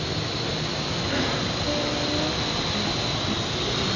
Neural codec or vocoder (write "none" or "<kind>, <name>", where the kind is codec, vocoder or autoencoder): none